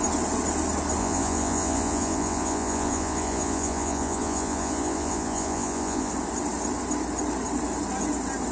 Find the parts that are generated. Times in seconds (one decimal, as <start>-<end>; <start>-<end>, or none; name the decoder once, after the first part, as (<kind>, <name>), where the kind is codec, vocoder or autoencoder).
1.0-6.1 (vocoder, Vocos)